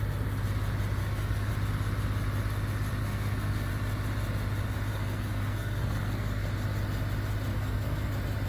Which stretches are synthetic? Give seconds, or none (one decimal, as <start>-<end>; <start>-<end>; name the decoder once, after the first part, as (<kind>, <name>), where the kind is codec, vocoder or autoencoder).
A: 1.0-1.5 (codec, SNAC); 3.0-3.7; 4.9-6.5; 7.5-8.1